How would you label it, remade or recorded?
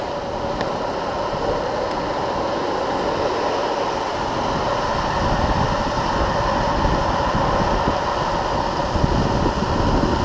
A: recorded